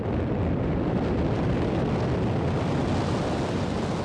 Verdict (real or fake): real